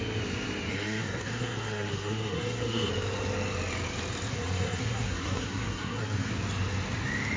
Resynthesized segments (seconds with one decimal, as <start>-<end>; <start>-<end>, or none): 0.7-2.9; 4.3-6.3